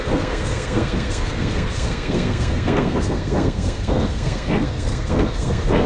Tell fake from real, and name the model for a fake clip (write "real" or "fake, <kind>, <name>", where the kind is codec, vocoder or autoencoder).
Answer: fake, codec, SNAC